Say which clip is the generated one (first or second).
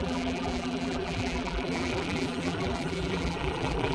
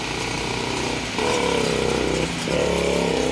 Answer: first